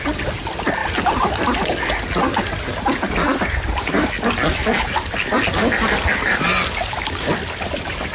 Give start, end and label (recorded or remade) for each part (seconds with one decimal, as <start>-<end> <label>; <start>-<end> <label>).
0.0-8.1 recorded